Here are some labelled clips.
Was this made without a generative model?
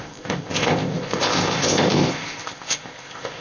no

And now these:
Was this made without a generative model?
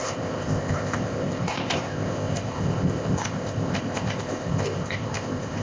no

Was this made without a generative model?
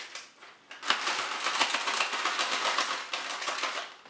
yes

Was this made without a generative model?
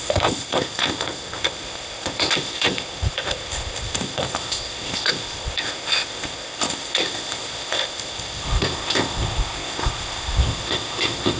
no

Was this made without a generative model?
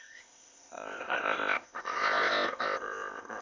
no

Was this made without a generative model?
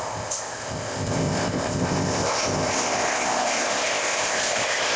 no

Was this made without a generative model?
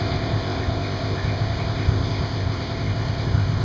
no